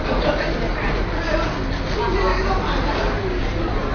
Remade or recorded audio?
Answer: recorded